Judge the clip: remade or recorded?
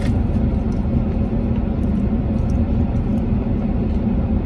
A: recorded